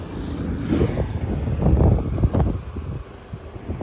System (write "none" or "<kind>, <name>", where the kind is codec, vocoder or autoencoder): none